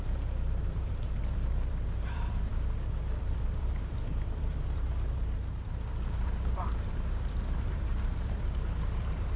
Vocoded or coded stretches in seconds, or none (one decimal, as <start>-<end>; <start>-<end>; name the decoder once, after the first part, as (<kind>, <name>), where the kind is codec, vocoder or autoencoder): 0.0-2.5 (vocoder, BigVGAN v2); 3.2-9.4

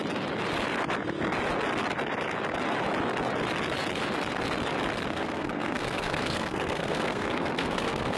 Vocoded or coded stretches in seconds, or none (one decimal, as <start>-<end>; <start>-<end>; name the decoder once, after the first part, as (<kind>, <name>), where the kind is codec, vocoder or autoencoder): 5.1-8.2 (codec, SNAC)

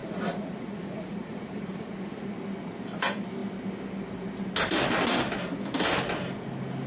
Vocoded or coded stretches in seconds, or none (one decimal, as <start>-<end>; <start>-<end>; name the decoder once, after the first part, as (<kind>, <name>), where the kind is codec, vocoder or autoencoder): 0.0-2.3 (vocoder, Vocos)

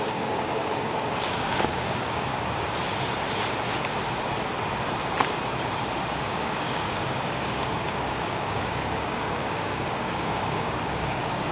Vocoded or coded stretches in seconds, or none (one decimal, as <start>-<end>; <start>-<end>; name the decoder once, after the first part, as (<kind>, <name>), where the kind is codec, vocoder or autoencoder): 0.0-2.3 (codec, DAC); 6.1-11.5

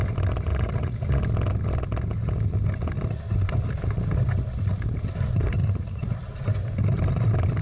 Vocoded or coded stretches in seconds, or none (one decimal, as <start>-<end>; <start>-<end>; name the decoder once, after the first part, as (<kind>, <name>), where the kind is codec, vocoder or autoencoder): 0.5-1.2 (vocoder, Vocos); 5.6-6.1

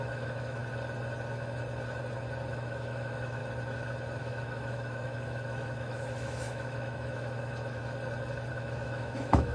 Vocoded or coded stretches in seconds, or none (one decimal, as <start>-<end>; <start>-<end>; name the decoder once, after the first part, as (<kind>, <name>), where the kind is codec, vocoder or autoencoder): 0.0-0.6 (autoencoder, DAC-VAE); 2.5-3.4; 4.2-7.8; 8.5-9.5

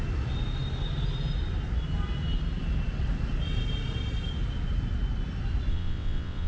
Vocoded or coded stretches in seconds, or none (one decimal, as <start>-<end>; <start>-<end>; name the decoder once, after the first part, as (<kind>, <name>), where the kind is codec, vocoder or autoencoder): 5.7-6.5 (vocoder, WaveNeXt)

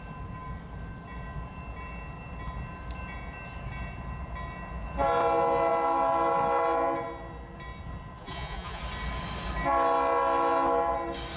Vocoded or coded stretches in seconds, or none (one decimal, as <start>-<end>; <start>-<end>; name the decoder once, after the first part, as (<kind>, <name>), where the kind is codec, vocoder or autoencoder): 8.2-8.8 (vocoder, Vocos)